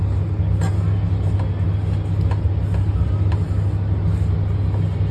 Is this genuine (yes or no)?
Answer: yes